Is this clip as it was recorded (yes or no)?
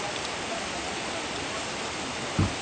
yes